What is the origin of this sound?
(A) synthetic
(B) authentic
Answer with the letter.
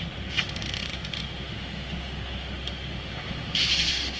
A